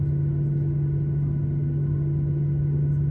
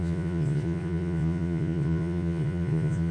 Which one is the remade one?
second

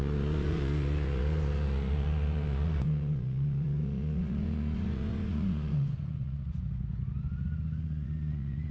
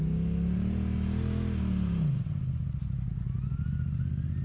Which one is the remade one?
first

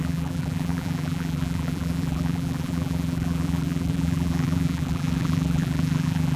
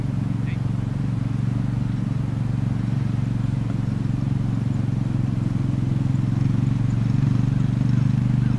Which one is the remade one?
first